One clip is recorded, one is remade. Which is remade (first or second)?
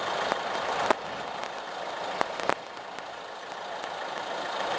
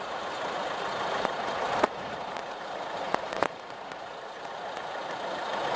second